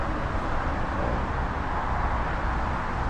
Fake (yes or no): no